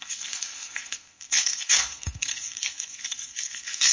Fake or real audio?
fake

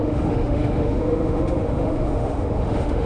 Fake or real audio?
fake